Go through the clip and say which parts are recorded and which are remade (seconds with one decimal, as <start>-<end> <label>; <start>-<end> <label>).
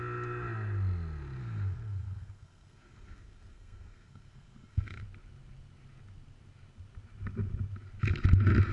0.0-1.4 recorded; 1.4-5.0 remade; 5.0-8.7 recorded